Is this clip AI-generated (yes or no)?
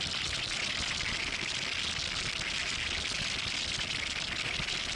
no